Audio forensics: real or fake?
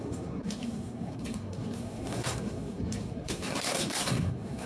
fake